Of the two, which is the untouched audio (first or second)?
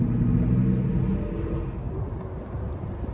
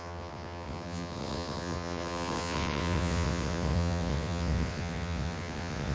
first